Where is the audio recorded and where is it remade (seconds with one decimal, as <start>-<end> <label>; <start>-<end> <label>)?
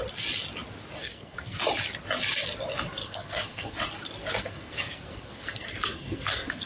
0.0-1.0 recorded; 1.0-1.6 remade; 1.6-3.0 recorded; 3.0-3.8 remade; 3.8-4.2 recorded; 4.2-6.7 remade